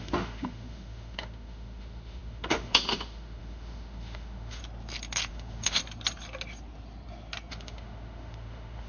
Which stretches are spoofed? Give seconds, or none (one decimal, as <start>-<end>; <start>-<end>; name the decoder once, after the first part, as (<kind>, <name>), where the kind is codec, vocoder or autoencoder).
0.0-4.6 (autoencoder, DAC-VAE); 5.3-5.8; 7.5-8.9